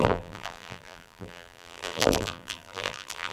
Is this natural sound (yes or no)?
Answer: no